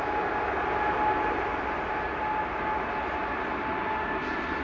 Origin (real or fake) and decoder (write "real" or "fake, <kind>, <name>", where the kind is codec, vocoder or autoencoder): real